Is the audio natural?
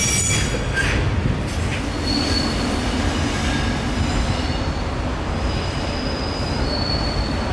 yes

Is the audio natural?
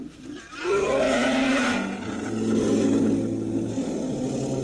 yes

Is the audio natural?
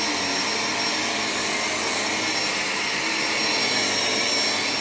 yes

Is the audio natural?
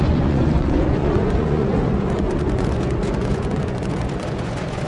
no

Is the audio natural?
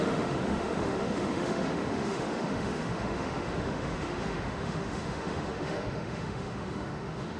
no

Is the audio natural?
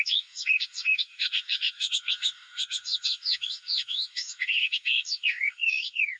no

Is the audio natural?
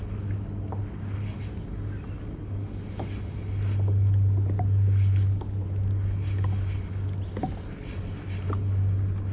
yes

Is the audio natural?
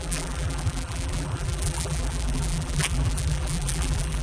no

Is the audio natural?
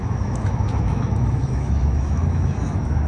no